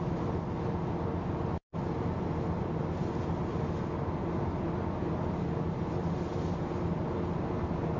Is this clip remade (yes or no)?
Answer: no